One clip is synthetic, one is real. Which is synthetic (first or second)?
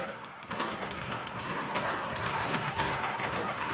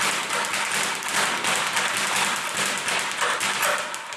first